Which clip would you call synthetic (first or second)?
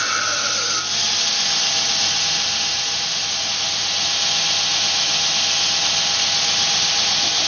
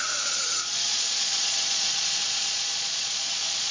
second